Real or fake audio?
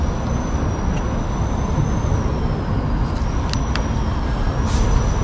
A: real